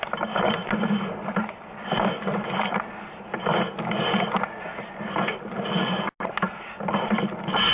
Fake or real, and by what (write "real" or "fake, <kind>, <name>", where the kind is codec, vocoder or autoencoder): real